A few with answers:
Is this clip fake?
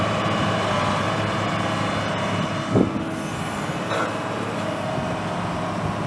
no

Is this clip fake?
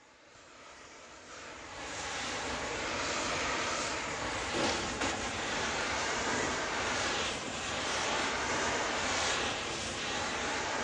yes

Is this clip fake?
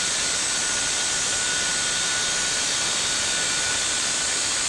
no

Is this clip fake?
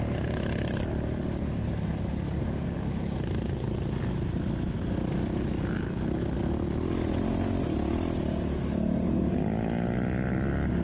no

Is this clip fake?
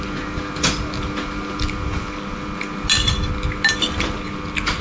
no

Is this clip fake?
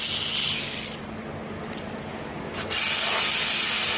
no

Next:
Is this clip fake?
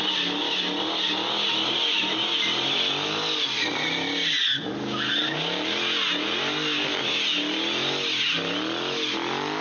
no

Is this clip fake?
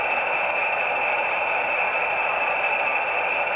no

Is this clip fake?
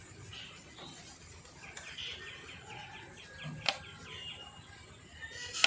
no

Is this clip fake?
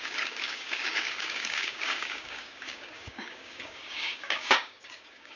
yes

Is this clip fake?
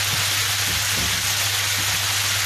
no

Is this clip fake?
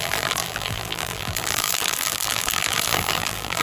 yes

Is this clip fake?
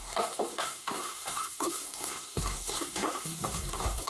yes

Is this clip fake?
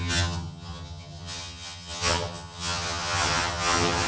yes